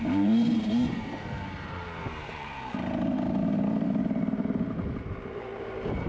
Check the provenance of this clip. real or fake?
fake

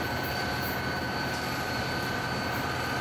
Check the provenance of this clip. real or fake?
real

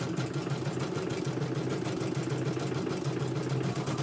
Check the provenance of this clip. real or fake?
real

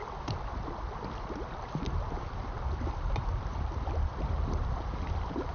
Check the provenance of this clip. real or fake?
fake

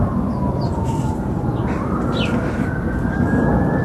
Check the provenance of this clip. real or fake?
fake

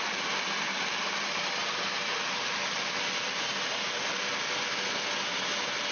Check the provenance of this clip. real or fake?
real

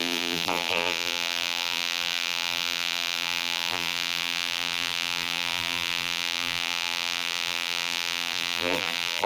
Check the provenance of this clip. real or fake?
fake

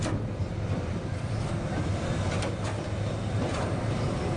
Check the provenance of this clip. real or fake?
fake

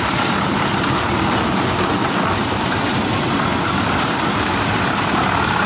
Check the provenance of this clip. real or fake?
fake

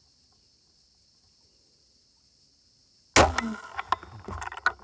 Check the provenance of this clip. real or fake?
real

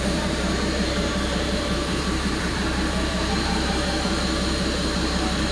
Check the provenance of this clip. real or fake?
fake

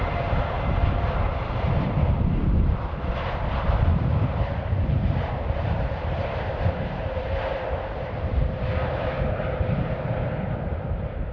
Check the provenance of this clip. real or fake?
fake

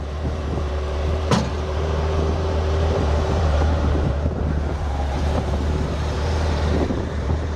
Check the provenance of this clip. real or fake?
fake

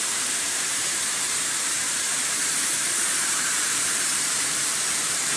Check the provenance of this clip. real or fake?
fake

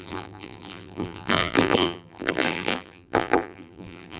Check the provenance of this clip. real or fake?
fake